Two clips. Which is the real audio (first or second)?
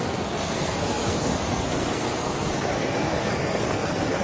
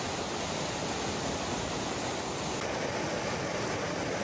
second